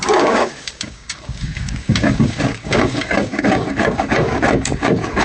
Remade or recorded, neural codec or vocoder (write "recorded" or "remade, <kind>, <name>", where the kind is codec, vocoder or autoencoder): remade, codec, DAC